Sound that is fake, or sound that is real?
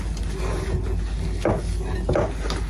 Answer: real